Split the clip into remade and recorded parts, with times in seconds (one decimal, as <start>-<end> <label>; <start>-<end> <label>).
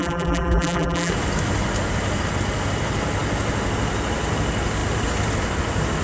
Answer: 0.0-1.1 remade; 1.1-6.0 recorded